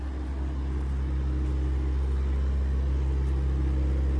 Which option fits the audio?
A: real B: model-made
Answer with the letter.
A